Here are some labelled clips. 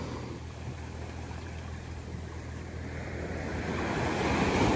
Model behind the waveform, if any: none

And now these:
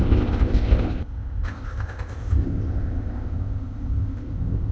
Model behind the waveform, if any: codec, ZipCodec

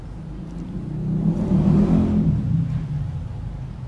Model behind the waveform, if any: none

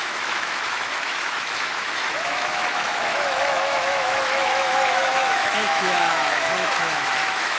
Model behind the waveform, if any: autoencoder, DAC-VAE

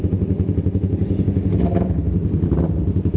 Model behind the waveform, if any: none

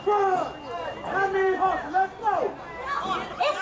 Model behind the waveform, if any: none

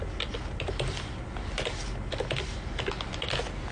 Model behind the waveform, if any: none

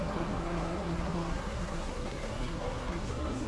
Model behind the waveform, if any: codec, SNAC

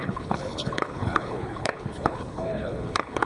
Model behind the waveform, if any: codec, HILCodec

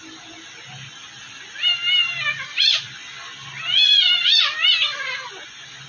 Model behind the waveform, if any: none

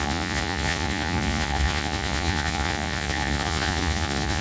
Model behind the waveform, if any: vocoder, Vocos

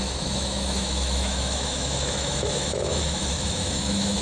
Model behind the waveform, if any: autoencoder, DAC-VAE